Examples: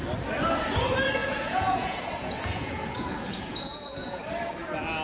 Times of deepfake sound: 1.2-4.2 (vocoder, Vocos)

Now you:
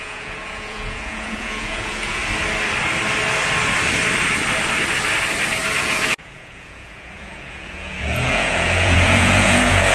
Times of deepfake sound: 0.0-2.2 (vocoder, Vocos); 5.8-9.9

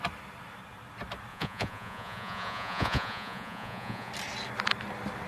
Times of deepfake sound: 1.3-4.1 (vocoder, Vocos)